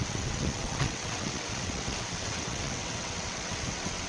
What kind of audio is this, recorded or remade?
remade